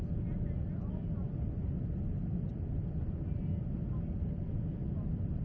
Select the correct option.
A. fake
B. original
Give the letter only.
B